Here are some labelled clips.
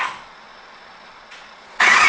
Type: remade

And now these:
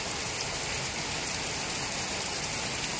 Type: recorded